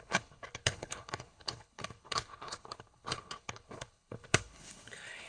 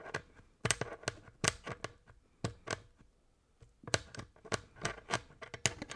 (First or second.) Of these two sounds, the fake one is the first